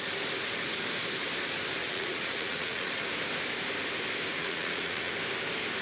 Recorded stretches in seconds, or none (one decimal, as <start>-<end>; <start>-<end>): 0.0-1.8; 2.9-4.4; 5.1-5.8